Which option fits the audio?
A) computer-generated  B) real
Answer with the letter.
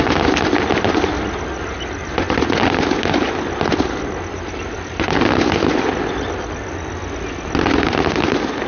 B